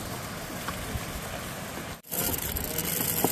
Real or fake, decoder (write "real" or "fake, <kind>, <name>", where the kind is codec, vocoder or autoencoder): real